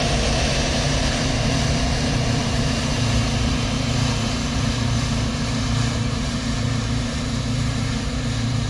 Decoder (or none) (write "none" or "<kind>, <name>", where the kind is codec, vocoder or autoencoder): vocoder, BigVGAN v2